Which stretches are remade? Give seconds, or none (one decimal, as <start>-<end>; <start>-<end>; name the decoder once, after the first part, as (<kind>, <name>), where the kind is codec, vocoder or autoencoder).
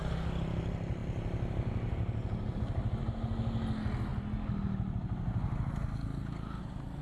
none